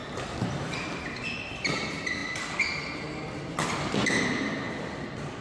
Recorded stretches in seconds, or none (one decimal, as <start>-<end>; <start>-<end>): 0.0-5.4